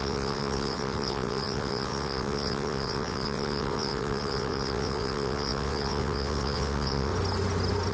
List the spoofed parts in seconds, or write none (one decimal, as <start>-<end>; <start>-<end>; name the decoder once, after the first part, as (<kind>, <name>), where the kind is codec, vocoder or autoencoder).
0.0-7.1 (vocoder, WaveNeXt)